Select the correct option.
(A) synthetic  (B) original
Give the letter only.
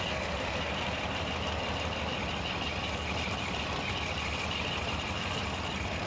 B